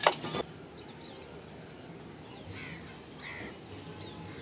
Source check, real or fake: real